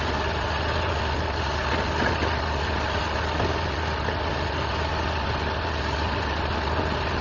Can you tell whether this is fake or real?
real